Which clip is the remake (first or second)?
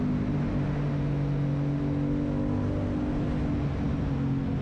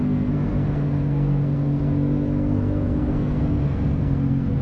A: second